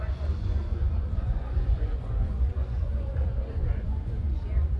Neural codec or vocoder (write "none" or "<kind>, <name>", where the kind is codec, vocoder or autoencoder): vocoder, Vocos